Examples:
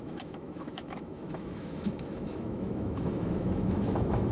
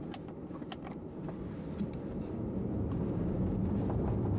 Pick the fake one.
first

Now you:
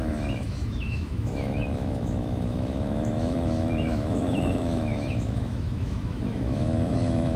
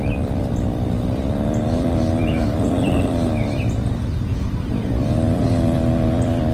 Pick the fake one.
first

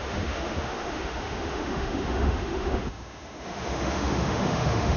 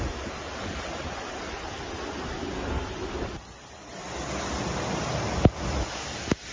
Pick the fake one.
first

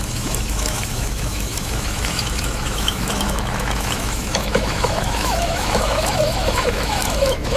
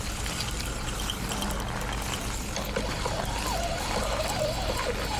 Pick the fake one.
first